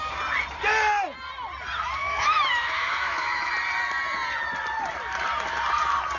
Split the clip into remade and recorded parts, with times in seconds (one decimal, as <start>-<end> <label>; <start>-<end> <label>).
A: 0.0-2.0 recorded; 2.0-3.5 remade; 3.5-6.2 recorded